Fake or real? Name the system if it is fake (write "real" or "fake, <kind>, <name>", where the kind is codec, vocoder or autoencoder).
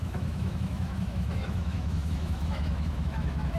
fake, autoencoder, DAC-VAE